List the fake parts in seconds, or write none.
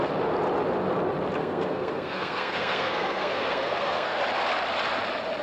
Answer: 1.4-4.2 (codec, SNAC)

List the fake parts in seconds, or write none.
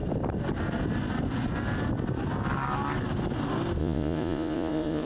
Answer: 3.8-5.1 (vocoder, Vocos)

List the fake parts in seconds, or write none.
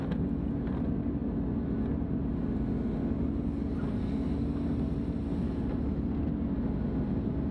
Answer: none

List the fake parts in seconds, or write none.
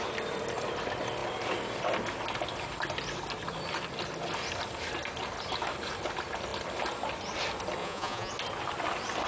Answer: 7.8-8.3 (vocoder, Vocos)